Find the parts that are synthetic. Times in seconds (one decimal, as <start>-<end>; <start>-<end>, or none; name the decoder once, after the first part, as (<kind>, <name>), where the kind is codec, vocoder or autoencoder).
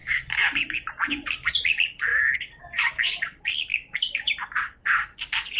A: 0.0-2.1 (vocoder, BigVGAN v2); 2.6-5.6